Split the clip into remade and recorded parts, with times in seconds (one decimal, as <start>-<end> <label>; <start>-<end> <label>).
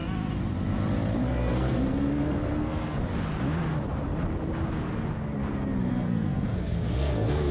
0.0-1.2 recorded; 1.2-3.0 remade; 3.0-5.9 recorded; 5.9-7.5 remade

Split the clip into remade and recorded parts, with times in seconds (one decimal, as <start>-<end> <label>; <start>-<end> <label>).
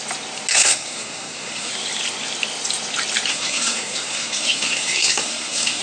0.0-0.5 recorded; 0.5-1.7 remade; 1.7-3.3 recorded; 3.3-5.8 remade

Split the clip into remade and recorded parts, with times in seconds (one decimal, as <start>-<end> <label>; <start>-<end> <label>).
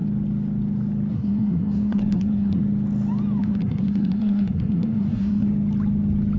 0.0-1.1 recorded; 1.1-2.6 remade; 2.6-3.4 recorded; 3.4-5.5 remade; 5.5-6.4 recorded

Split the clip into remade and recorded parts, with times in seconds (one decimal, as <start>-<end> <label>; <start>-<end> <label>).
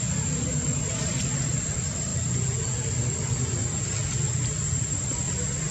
0.0-5.7 recorded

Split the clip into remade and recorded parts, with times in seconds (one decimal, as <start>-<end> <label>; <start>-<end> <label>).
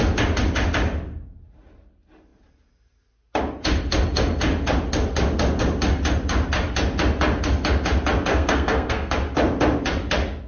0.0-8.3 recorded; 8.3-9.1 remade; 9.1-10.5 recorded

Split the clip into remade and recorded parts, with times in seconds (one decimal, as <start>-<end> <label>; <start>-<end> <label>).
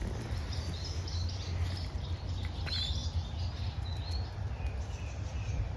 0.0-5.8 recorded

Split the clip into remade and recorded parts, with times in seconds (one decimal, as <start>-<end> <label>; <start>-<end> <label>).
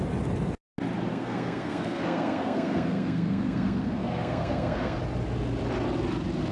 0.0-1.1 recorded; 1.1-5.0 remade; 5.0-6.5 recorded